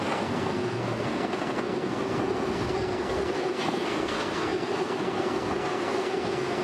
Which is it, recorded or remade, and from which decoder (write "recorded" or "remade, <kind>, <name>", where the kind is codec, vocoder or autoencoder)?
remade, codec, SNAC